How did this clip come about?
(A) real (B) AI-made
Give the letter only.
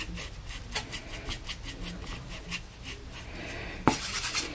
A